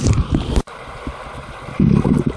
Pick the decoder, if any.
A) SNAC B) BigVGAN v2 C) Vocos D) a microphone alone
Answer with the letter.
D